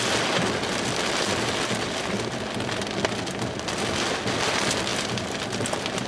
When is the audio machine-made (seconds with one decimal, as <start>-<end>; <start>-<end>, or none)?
none